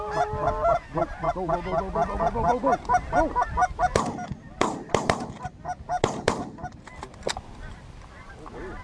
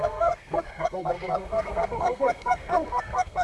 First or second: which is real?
first